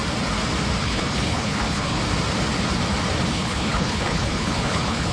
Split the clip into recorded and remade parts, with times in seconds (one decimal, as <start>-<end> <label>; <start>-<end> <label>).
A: 0.0-0.8 recorded; 0.8-2.0 remade; 2.0-3.3 recorded; 3.3-5.1 remade

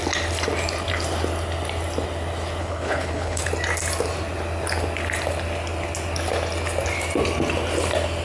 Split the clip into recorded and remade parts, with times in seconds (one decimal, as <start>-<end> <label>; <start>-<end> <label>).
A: 0.0-2.6 recorded; 2.6-3.4 remade; 3.4-8.2 recorded

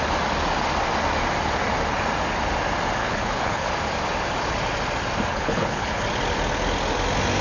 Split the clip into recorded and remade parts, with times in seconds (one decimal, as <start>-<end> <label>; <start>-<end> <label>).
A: 0.0-3.0 recorded; 3.0-3.7 remade; 3.7-5.3 recorded; 5.3-6.0 remade; 6.0-7.4 recorded

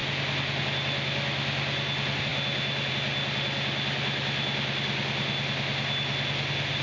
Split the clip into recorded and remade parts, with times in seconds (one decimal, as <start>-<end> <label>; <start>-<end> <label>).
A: 0.0-6.8 recorded

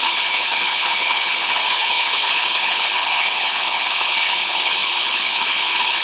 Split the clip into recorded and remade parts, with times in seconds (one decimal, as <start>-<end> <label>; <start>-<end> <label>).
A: 0.0-6.0 remade